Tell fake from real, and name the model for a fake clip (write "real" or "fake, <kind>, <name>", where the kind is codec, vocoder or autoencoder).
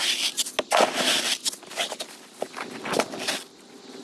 real